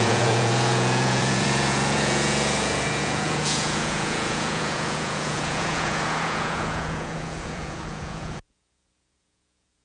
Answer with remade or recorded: remade